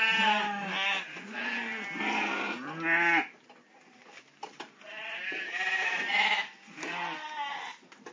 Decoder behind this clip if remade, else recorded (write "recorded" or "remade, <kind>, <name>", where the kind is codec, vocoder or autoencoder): recorded